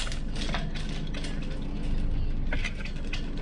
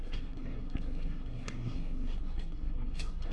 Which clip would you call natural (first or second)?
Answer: first